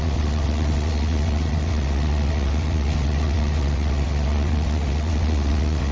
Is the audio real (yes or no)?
no